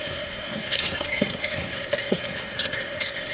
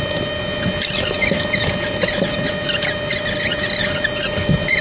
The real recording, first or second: second